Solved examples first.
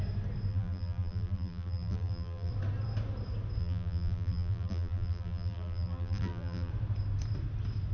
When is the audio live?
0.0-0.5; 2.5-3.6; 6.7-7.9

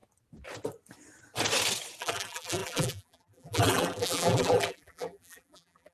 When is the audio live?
0.0-2.0

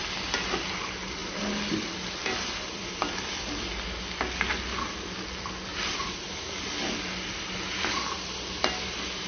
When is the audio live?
0.0-1.2; 2.9-9.3